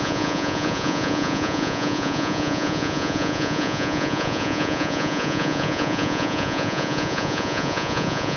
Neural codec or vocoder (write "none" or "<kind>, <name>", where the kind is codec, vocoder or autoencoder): vocoder, Vocos